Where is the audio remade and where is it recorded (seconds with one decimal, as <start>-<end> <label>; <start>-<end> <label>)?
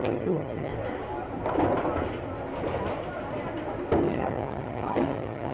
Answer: 0.0-0.7 remade; 0.7-4.0 recorded; 4.0-5.5 remade